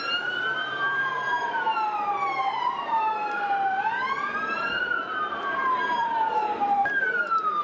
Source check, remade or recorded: remade